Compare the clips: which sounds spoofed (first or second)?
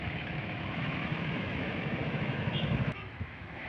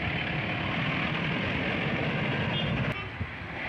first